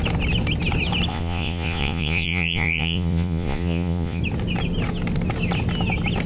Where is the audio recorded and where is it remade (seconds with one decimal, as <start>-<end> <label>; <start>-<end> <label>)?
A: 0.0-1.1 recorded; 1.1-4.2 remade; 4.2-6.3 recorded